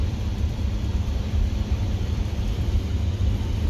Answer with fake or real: fake